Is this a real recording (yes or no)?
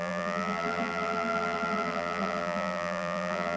no